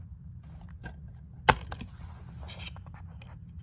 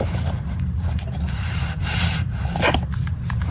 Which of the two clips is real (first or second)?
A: first